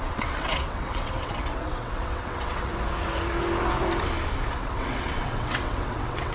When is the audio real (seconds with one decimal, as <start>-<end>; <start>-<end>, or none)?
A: 2.7-4.6